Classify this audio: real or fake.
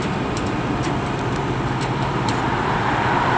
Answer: fake